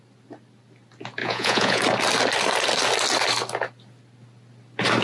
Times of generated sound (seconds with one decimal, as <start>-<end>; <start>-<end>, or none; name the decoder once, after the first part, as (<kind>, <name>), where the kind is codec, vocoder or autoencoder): 1.2-1.8 (vocoder, Vocos)